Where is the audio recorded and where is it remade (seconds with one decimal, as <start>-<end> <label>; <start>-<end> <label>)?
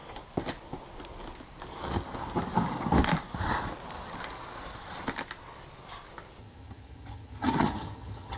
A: 0.0-6.4 recorded; 6.4-8.4 remade